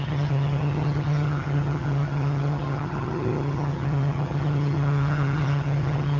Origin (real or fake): fake